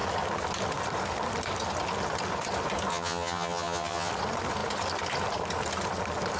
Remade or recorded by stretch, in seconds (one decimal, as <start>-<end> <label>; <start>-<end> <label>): 0.0-2.9 recorded; 2.9-4.1 remade; 4.1-6.4 recorded